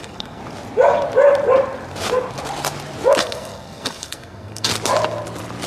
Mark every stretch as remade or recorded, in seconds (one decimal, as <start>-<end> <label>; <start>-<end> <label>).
0.0-0.4 remade; 0.4-3.2 recorded; 3.2-4.7 remade; 4.7-5.7 recorded

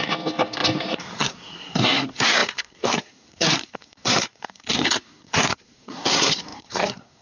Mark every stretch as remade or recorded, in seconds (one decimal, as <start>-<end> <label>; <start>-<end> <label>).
0.0-7.2 remade

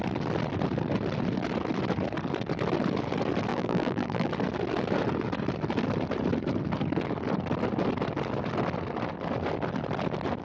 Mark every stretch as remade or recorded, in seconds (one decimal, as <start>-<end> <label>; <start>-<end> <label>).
0.0-3.5 recorded; 3.5-4.3 remade; 4.3-10.4 recorded

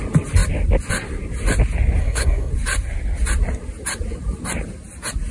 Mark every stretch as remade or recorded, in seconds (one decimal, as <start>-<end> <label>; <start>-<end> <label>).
0.0-2.0 recorded; 2.0-2.5 remade; 2.5-5.3 recorded

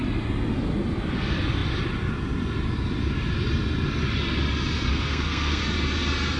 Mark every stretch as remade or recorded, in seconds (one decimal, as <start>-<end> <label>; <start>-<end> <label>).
0.0-4.9 recorded; 4.9-5.6 remade; 5.6-6.4 recorded